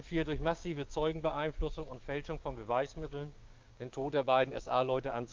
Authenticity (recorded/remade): remade